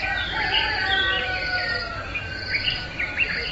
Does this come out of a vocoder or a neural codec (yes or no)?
no